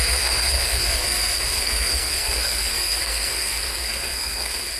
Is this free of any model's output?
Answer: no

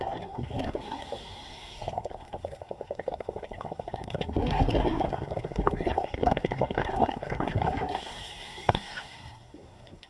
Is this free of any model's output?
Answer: no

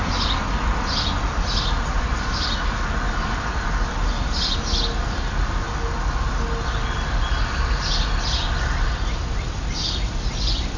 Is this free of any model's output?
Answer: yes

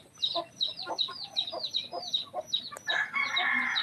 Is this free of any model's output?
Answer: yes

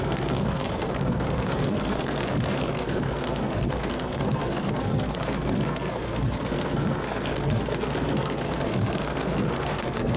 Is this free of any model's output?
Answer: no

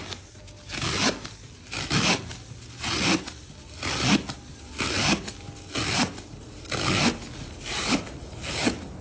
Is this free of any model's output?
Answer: yes